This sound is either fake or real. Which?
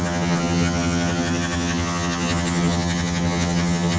fake